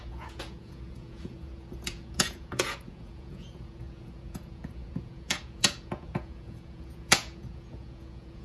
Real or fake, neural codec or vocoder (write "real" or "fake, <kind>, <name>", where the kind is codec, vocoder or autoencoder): fake, vocoder, Vocos